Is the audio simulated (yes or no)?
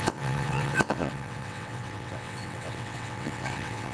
yes